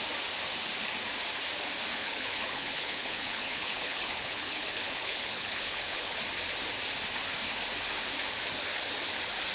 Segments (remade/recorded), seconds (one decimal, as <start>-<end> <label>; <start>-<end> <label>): 0.0-2.0 recorded; 2.0-6.2 remade; 6.2-9.5 recorded